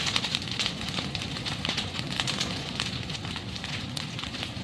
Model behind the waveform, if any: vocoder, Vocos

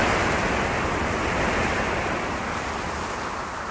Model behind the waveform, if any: none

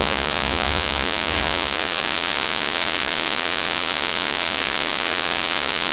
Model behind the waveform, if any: vocoder, Vocos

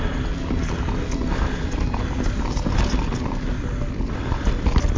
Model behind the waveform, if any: none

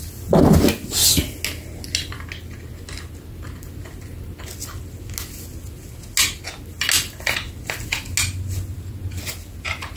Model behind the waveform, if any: none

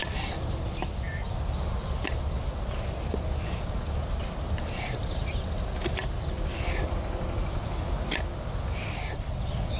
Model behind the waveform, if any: none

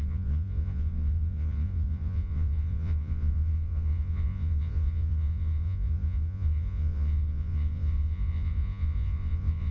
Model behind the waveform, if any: vocoder, Vocos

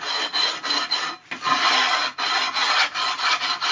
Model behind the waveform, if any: none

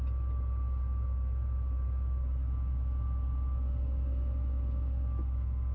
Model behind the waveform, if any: none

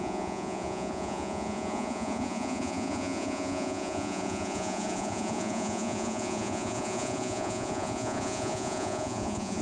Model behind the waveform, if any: vocoder, Vocos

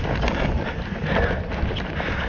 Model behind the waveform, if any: none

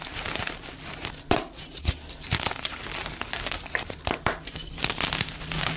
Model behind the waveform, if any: none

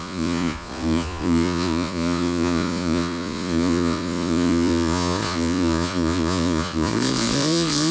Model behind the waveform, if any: vocoder, Vocos